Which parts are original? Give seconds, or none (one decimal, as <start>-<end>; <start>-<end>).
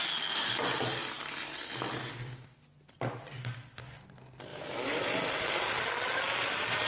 0.0-4.5; 5.0-6.9